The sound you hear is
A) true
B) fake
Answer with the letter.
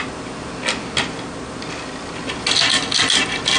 A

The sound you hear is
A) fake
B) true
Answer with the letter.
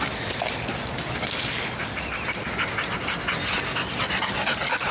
B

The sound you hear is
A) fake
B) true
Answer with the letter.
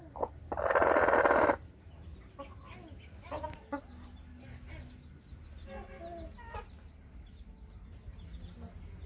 B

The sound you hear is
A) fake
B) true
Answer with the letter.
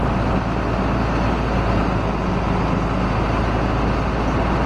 B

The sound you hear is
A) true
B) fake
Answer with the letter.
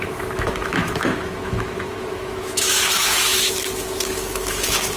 B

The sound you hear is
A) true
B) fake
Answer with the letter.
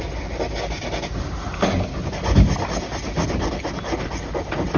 A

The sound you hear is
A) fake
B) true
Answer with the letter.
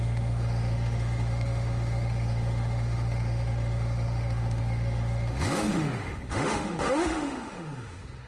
A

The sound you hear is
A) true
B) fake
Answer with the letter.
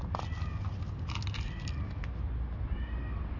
A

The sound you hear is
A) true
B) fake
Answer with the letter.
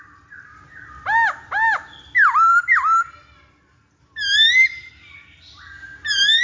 A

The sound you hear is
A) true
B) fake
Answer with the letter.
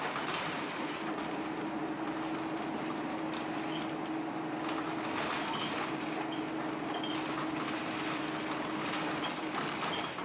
A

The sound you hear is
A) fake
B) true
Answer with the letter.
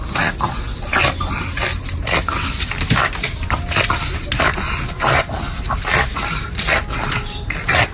B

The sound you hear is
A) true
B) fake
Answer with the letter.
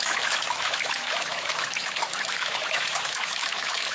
B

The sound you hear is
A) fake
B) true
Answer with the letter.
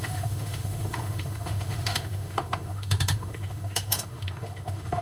A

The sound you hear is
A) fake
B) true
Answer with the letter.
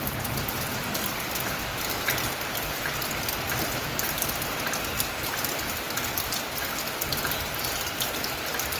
B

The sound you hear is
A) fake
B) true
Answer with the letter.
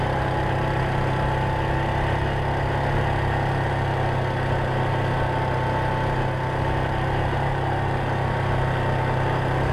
B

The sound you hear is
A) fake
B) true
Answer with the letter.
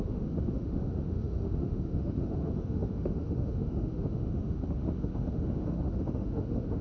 A